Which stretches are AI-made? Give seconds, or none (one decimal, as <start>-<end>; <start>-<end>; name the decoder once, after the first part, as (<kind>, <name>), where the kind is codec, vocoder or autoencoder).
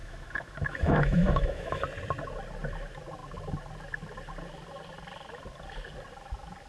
0.0-1.8 (autoencoder, DAC-VAE)